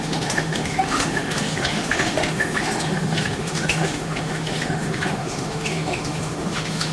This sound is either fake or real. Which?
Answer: fake